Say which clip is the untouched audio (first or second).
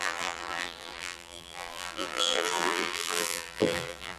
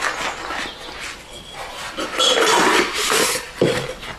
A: second